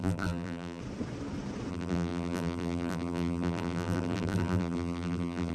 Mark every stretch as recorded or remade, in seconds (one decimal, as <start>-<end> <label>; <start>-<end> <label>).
0.0-0.8 remade; 0.8-1.7 recorded; 1.7-5.5 remade